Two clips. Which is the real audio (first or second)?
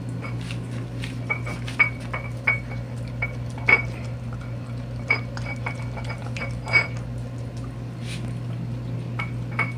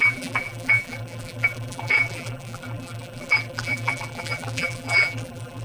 first